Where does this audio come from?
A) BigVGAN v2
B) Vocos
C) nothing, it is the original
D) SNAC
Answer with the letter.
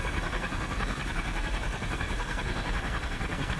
D